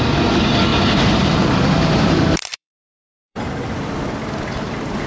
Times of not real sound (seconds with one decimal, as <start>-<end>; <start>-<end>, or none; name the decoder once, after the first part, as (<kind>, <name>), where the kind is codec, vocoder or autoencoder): 0.7-3.5 (vocoder, BigVGAN v2)